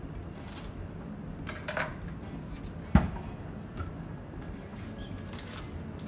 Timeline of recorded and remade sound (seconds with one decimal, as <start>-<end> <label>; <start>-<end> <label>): 0.0-6.1 recorded